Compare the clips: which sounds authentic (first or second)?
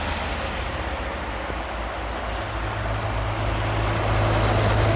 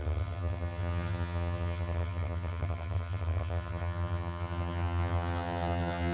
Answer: first